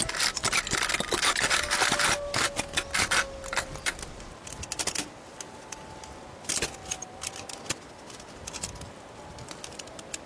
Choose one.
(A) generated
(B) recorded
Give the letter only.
B